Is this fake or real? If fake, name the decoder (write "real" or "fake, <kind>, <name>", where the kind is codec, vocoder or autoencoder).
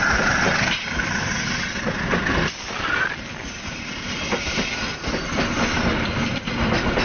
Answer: real